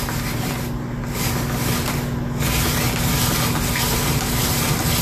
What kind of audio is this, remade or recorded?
recorded